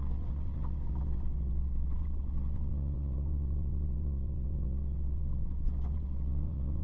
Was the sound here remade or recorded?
remade